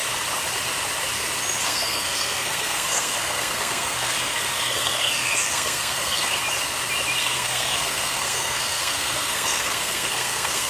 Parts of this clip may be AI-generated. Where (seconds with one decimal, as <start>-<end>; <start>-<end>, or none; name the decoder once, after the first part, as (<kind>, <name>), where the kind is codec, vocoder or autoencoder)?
1.6-6.4 (codec, SNAC); 7.2-10.7